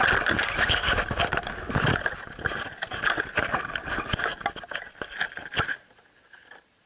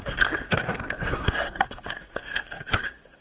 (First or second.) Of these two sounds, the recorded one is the first